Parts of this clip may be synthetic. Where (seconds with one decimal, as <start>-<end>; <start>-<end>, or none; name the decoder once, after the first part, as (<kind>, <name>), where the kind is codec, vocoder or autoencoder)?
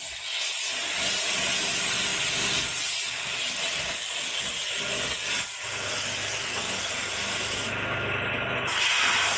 none